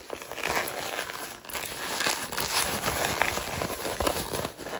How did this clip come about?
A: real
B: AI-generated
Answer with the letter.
A